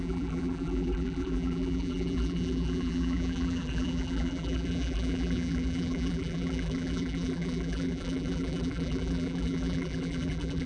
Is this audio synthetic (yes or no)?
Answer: yes